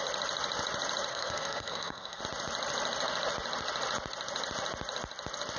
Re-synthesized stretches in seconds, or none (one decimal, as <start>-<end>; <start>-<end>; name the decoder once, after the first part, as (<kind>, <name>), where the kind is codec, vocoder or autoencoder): 1.1-2.2 (codec, SNAC)